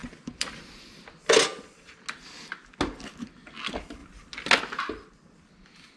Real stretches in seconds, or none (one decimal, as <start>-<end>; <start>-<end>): 0.6-6.0